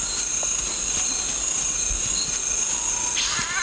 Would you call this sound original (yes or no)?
yes